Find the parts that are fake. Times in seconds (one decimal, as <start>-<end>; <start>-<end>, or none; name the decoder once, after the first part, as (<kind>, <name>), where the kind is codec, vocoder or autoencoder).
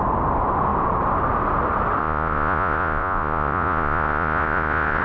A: 2.0-5.0 (vocoder, Vocos)